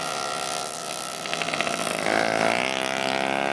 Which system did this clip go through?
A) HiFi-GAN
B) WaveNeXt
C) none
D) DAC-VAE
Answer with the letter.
C